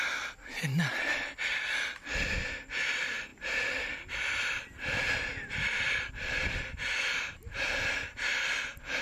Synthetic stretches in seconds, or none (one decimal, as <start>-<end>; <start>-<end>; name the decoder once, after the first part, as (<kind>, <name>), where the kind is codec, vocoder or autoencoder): none